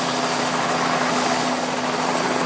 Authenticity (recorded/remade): recorded